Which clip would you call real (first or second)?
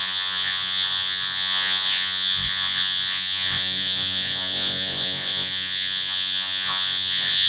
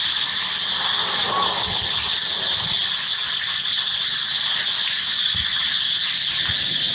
second